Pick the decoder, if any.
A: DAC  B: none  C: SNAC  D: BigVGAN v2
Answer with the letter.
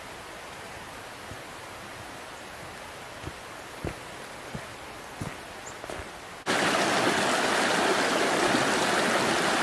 B